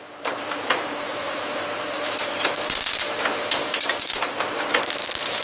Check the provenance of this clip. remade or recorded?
remade